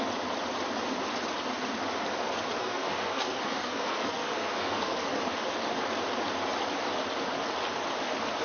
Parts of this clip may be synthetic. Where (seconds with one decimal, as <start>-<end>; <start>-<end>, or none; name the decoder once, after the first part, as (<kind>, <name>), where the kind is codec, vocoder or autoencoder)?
2.6-5.2 (codec, SNAC)